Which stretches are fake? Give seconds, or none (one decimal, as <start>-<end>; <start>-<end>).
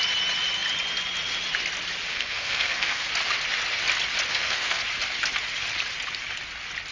2.1-3.1; 4.3-4.8